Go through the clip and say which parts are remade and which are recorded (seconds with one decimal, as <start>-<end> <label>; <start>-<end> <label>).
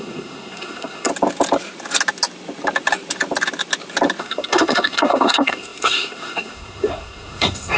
0.0-1.1 remade; 1.1-4.2 recorded; 4.2-7.8 remade